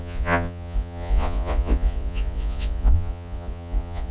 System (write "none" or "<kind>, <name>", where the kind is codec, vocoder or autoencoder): vocoder, Vocos